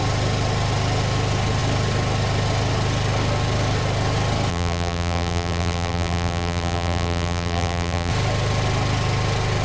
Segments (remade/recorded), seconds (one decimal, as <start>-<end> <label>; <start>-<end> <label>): 0.0-4.5 recorded; 4.5-8.1 remade; 8.1-9.6 recorded